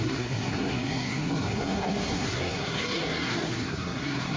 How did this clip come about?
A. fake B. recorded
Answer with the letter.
A